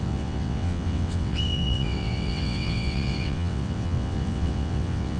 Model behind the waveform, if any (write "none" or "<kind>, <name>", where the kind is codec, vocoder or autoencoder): vocoder, WaveNeXt